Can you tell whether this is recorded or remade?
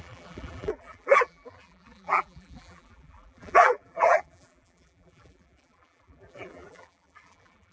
remade